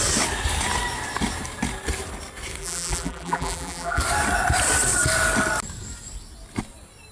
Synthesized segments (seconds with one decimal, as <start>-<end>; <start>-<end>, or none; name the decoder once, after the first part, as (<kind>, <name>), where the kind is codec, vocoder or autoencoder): 2.6-4.0 (vocoder, BigVGAN v2)